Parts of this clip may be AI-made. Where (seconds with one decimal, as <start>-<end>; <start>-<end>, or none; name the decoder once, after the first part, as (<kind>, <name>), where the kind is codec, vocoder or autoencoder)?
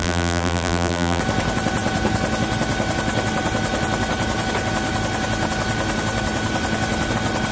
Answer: 0.0-1.2 (vocoder, BigVGAN v2)